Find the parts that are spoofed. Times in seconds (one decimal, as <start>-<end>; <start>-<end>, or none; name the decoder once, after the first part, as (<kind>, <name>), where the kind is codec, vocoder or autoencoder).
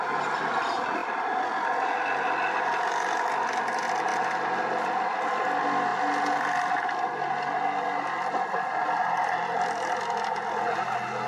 none